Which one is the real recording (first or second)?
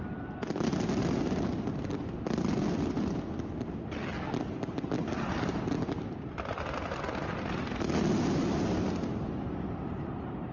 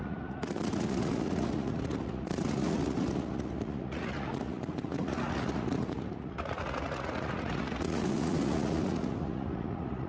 first